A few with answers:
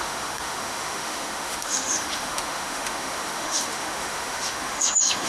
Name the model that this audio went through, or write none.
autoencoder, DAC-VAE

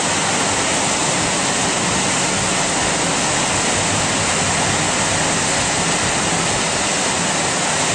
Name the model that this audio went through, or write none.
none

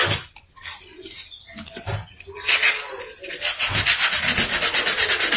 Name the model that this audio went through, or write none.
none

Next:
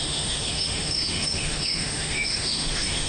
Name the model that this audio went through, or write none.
autoencoder, DAC-VAE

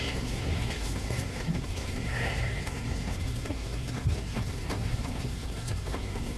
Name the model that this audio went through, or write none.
codec, SNAC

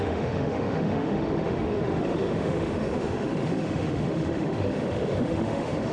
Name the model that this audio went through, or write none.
autoencoder, DAC-VAE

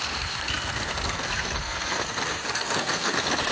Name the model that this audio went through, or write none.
codec, SNAC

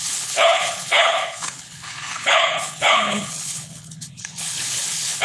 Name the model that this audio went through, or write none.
codec, HILCodec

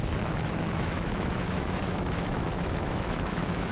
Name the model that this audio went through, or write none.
autoencoder, DAC-VAE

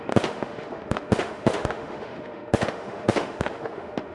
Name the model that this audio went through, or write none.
autoencoder, DAC-VAE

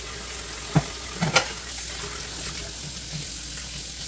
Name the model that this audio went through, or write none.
none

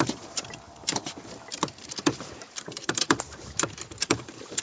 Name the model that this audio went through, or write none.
vocoder, BigVGAN v2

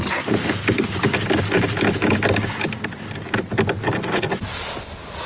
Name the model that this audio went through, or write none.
none